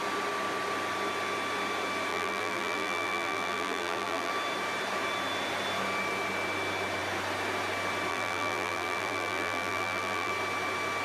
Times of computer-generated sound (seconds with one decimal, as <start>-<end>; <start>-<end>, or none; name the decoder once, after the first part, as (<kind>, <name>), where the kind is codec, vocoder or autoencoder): 2.1-4.3 (vocoder, BigVGAN v2); 8.1-10.3